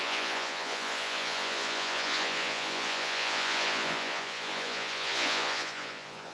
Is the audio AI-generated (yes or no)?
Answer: yes